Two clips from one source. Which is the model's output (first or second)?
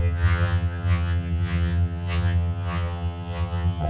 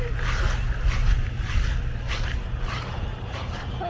first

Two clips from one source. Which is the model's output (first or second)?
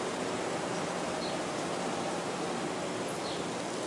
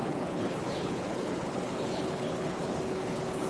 second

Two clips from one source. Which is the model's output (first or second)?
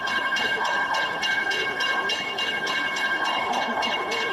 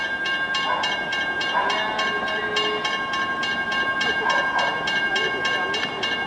first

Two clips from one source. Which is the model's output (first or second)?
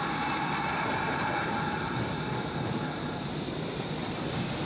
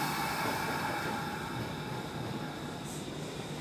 first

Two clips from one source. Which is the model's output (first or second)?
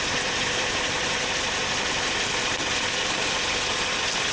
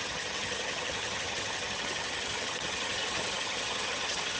second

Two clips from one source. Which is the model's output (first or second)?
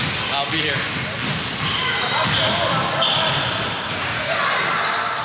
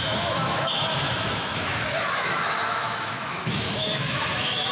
second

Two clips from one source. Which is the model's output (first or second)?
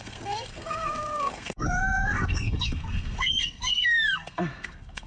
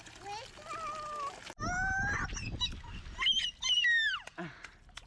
first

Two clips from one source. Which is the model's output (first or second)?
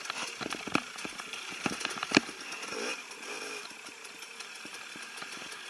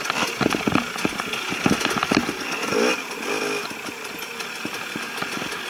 first